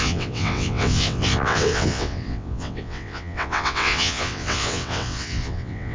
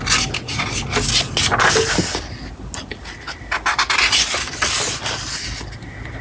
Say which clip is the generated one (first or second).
first